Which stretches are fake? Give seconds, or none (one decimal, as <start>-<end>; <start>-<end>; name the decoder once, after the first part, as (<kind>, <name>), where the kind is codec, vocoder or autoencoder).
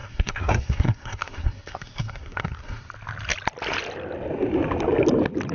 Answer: 0.0-2.9 (codec, SNAC)